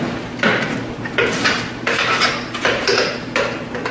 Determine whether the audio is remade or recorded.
recorded